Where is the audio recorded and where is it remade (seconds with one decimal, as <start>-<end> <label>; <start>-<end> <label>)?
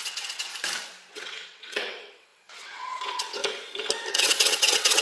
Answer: 0.0-0.5 remade; 0.5-1.1 recorded; 1.1-3.4 remade; 3.4-4.1 recorded; 4.1-5.0 remade